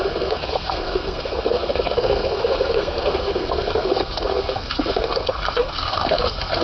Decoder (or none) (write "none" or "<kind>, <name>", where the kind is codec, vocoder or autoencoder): codec, SNAC